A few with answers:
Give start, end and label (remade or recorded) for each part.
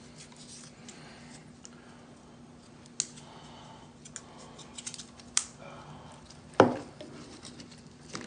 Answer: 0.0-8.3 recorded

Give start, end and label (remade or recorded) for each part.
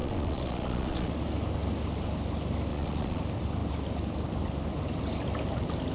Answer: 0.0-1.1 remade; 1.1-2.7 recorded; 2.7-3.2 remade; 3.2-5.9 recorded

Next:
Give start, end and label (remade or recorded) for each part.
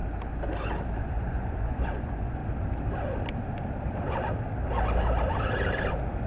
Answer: 0.0-1.0 recorded; 1.0-2.4 remade; 2.4-6.3 recorded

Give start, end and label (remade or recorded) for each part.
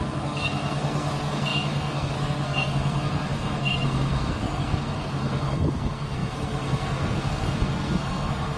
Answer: 0.0-8.6 remade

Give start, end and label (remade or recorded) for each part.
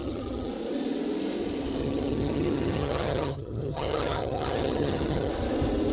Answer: 0.0-0.5 remade; 0.5-1.8 recorded; 1.8-5.3 remade; 5.3-5.9 recorded